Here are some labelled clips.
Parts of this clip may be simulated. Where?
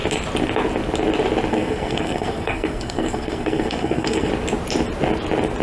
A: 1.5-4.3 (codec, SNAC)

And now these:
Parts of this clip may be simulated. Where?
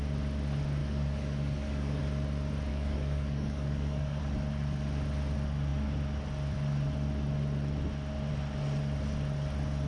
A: 0.8-2.0 (codec, DAC); 2.7-4.2